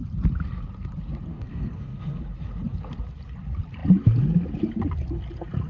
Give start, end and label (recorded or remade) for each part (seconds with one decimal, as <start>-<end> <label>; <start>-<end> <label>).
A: 0.0-1.3 recorded; 1.3-2.2 remade; 2.2-5.7 recorded